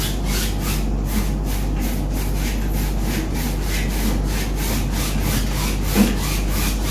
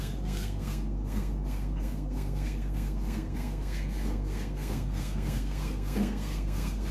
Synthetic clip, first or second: second